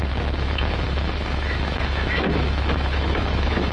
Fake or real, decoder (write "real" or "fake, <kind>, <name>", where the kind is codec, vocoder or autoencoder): fake, autoencoder, DAC-VAE